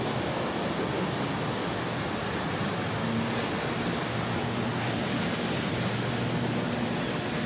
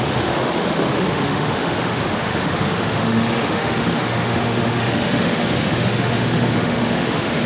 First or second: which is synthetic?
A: second